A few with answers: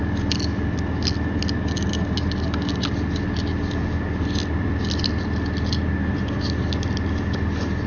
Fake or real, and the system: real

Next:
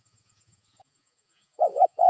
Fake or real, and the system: fake, vocoder, Vocos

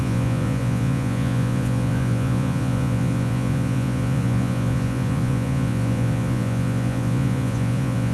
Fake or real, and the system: fake, vocoder, Vocos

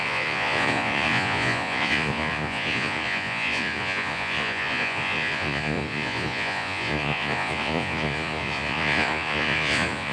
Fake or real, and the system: fake, vocoder, Vocos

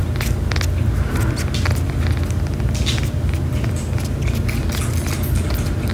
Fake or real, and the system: real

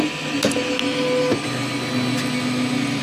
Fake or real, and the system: real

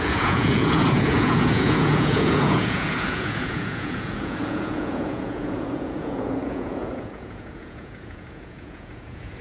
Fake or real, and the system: fake, vocoder, Vocos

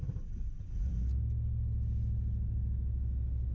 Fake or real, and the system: real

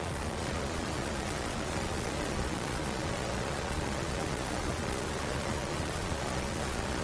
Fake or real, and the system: fake, vocoder, Vocos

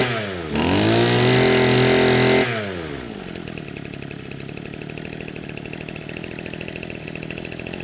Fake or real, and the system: real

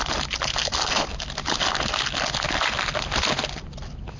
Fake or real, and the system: real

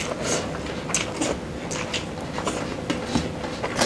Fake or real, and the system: real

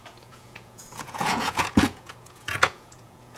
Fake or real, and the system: fake, vocoder, Vocos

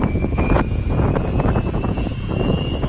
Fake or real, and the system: fake, vocoder, Vocos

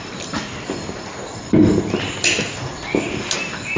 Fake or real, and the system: real